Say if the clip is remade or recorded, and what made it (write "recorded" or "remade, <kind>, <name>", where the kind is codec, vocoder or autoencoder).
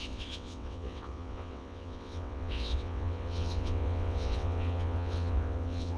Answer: remade, vocoder, WaveNeXt